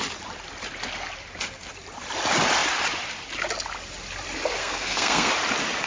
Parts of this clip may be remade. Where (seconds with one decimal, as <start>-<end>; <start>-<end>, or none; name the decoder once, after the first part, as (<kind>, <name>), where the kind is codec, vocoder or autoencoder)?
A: 4.6-5.3 (codec, SNAC)